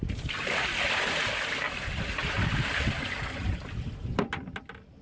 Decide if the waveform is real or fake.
real